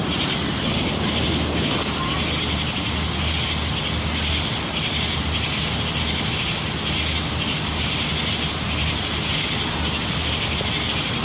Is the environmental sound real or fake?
real